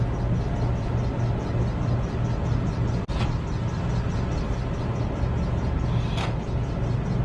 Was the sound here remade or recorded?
recorded